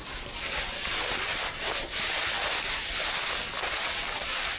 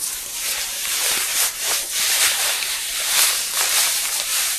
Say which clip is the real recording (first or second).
first